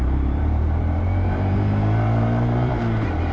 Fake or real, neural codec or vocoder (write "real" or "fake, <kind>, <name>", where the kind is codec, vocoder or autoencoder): fake, vocoder, BigVGAN v2